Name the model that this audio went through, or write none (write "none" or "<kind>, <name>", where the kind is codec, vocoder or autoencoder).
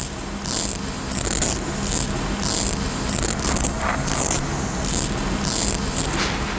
none